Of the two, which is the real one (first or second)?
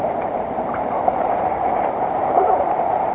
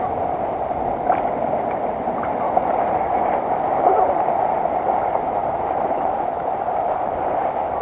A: second